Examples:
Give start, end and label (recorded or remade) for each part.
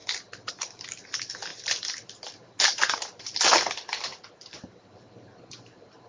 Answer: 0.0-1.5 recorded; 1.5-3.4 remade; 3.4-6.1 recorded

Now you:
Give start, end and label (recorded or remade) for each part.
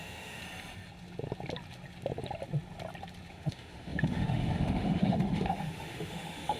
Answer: 0.0-0.4 remade; 0.4-3.3 recorded; 3.3-6.6 remade